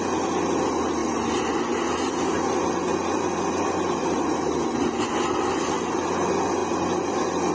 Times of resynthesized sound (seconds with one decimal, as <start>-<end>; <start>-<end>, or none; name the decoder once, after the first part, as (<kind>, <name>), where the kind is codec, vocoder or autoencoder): 1.0-1.6 (vocoder, BigVGAN v2); 2.9-4.5